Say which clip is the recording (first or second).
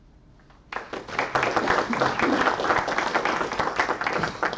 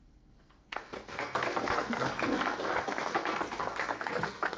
first